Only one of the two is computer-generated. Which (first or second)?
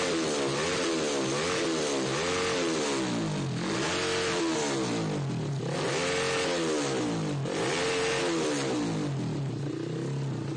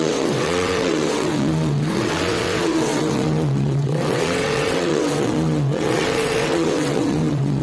second